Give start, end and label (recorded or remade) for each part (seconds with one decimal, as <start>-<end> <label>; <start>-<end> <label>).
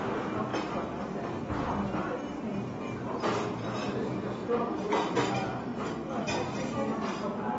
0.0-2.3 recorded; 2.3-3.4 remade; 3.4-4.4 recorded; 4.4-5.3 remade; 5.3-7.6 recorded